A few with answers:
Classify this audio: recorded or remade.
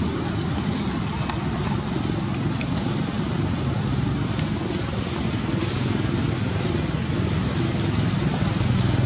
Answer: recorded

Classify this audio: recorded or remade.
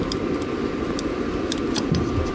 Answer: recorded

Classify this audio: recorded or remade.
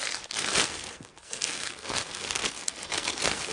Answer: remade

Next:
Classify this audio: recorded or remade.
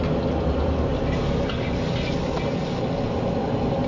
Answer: recorded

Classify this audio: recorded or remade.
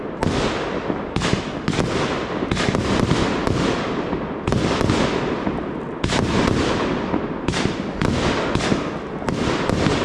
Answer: recorded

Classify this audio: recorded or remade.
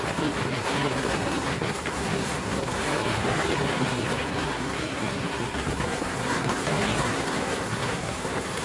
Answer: remade